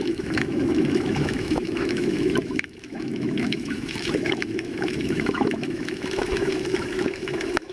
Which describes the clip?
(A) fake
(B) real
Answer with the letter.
A